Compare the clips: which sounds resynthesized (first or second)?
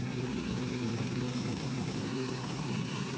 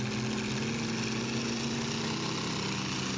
first